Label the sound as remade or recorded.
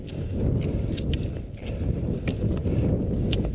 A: recorded